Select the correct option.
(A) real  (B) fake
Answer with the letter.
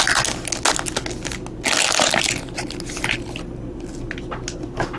A